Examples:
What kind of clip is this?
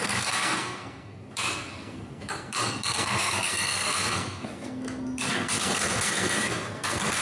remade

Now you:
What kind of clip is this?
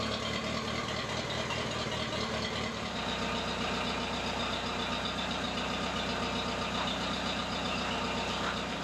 recorded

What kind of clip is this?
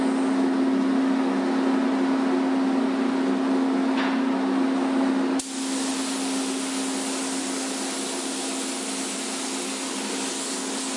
recorded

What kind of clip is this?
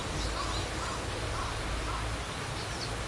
recorded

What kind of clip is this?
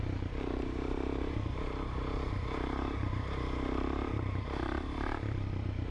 remade